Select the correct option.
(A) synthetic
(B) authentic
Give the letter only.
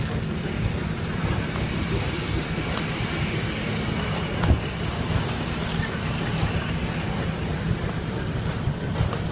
B